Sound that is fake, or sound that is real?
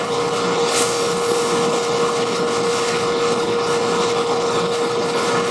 fake